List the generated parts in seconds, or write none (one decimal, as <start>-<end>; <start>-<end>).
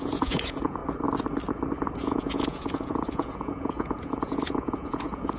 0.0-0.8; 2.0-5.4